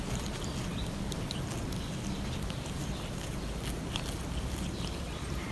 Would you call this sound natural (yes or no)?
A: yes